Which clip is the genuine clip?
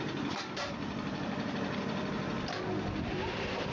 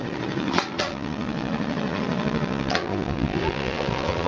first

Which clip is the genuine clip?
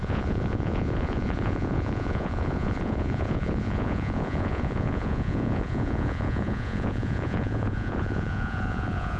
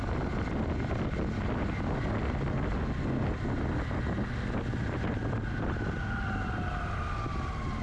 second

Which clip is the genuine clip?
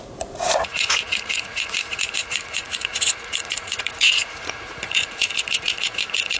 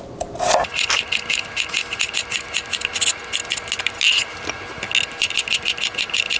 second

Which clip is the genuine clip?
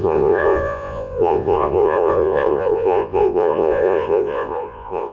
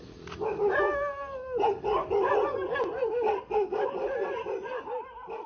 second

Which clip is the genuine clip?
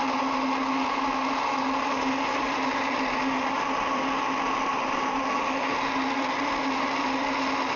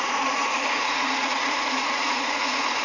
first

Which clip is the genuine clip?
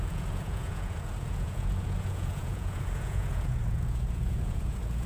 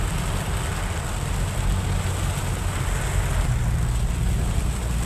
second